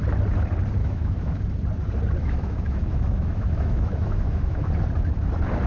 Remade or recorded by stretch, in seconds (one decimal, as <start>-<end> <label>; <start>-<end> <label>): 0.0-0.8 recorded; 0.8-1.4 remade; 1.4-2.2 recorded; 2.2-4.7 remade; 4.7-5.7 recorded